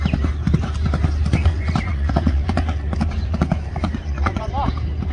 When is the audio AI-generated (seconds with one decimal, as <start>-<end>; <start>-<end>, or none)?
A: 1.4-4.5